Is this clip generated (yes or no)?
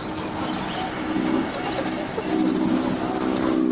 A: no